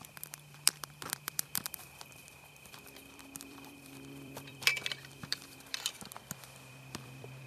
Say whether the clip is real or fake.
fake